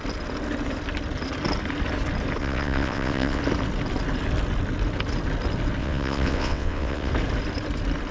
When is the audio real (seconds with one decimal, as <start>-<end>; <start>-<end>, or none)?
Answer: 0.0-2.4; 3.4-5.8; 7.1-8.1